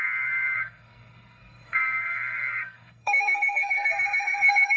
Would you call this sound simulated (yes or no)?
yes